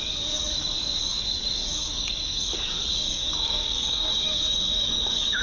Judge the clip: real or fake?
fake